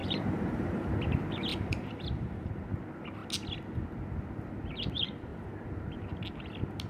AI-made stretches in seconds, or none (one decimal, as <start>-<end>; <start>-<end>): 0.0-0.9; 1.5-2.5